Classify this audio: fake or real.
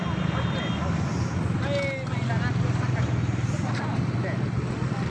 real